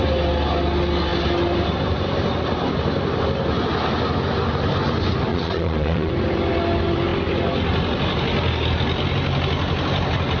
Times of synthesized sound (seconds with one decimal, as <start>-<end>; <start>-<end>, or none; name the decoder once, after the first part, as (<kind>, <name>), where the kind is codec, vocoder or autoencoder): 5.3-6.1 (vocoder, Vocos)